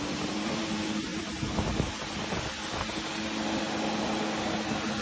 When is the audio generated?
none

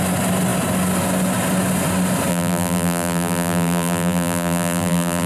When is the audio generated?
2.3-5.3